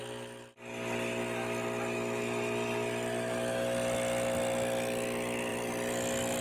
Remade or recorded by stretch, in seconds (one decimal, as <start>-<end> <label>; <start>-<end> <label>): 0.0-5.5 recorded; 5.5-6.4 remade